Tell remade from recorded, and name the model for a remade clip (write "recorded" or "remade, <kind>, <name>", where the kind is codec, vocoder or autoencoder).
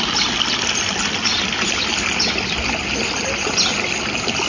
recorded